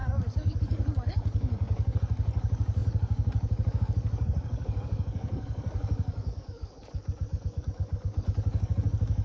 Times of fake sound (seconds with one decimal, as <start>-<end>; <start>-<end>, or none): 0.0-9.2